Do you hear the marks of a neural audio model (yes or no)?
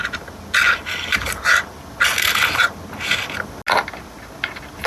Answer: no